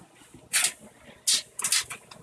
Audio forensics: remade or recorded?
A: recorded